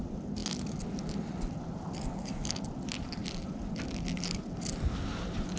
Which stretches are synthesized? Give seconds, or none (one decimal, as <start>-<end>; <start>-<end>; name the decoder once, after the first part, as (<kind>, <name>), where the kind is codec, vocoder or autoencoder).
none